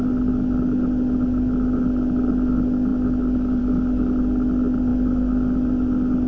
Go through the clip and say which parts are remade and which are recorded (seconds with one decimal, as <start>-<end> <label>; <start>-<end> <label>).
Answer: 0.0-6.3 recorded